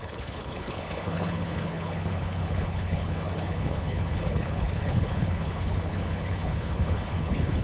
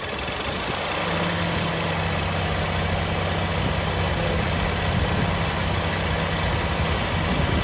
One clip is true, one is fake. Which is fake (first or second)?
first